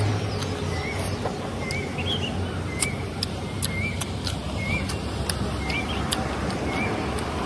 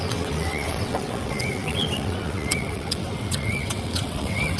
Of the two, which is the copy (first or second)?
second